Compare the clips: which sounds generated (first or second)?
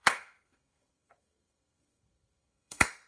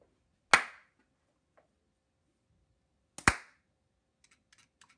first